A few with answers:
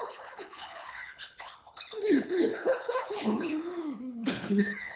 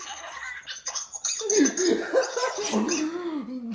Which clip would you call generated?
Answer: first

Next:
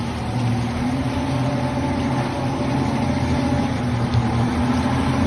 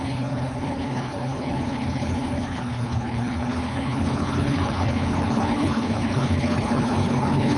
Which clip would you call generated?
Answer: second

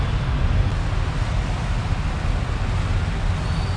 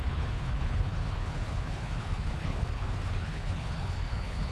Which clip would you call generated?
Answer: second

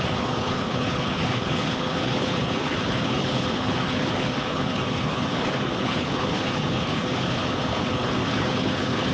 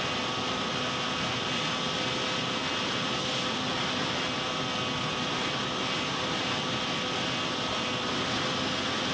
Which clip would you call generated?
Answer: first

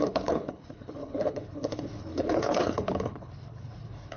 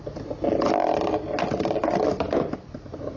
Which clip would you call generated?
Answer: first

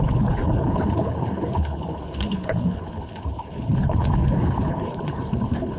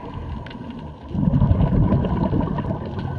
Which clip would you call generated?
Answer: first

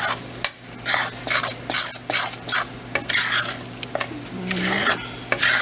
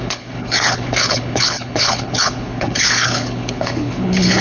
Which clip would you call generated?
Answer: second